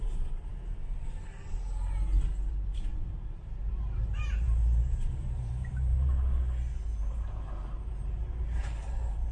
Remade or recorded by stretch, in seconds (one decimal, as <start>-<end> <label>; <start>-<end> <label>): 0.0-0.5 remade; 0.5-2.5 recorded; 2.5-6.1 remade; 6.1-7.1 recorded; 7.1-9.3 remade